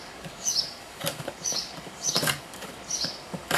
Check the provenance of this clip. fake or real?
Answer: fake